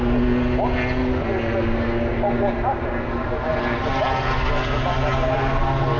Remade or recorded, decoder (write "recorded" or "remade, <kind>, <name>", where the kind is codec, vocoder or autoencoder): recorded